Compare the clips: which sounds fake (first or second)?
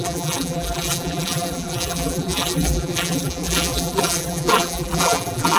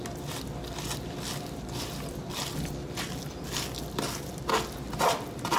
first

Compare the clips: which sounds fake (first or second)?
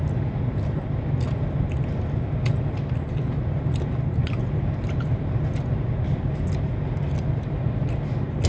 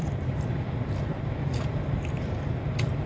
second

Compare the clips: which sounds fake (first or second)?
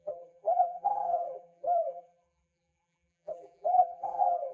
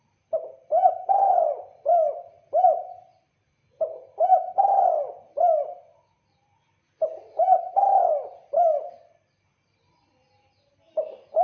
first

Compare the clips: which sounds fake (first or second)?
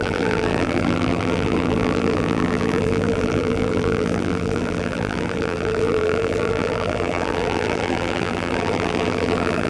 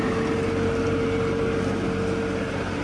first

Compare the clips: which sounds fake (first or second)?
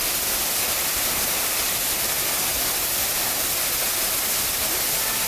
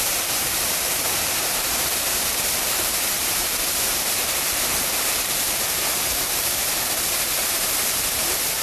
second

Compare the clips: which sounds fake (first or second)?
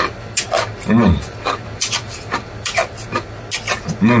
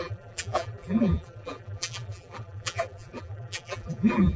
second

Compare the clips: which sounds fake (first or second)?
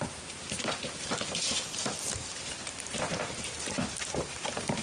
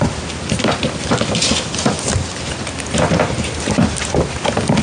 first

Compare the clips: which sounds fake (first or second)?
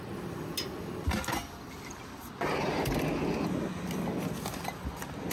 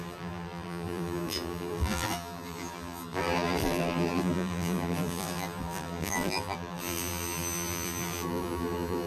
second